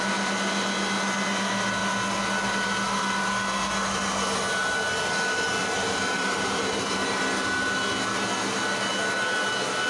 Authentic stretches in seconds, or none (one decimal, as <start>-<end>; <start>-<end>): 0.0-5.6; 7.2-9.9